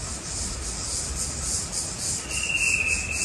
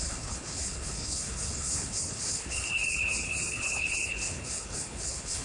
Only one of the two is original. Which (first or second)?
first